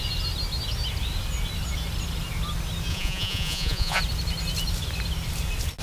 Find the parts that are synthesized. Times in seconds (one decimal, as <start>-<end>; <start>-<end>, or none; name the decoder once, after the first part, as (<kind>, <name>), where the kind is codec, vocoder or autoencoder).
2.9-4.0 (vocoder, Vocos)